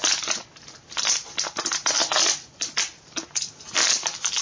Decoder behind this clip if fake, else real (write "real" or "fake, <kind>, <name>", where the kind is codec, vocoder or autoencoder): real